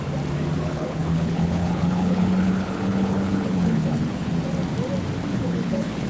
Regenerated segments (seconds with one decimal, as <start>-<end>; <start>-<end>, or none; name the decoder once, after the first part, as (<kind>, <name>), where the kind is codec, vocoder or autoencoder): 0.6-4.3 (codec, HILCodec); 5.3-6.1